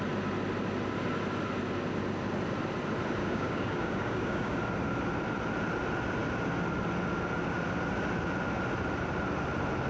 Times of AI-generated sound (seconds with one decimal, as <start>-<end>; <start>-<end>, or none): 3.2-4.6